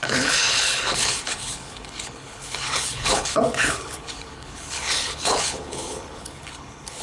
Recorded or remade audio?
remade